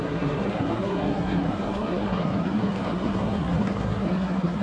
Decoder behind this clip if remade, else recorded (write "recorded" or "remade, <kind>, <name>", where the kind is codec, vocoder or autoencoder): remade, codec, SNAC